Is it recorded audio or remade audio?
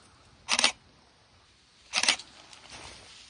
recorded